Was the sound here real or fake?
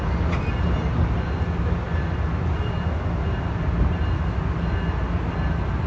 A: real